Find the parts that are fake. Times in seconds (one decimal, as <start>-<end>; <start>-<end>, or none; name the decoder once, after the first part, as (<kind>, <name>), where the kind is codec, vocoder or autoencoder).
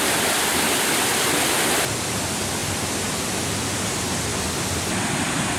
none